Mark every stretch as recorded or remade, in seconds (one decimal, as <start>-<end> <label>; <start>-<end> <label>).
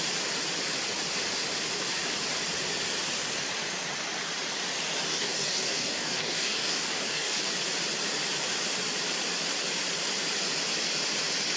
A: 0.0-5.1 recorded; 5.1-7.4 remade; 7.4-11.6 recorded